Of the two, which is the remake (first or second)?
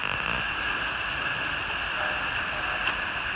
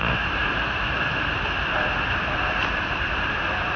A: second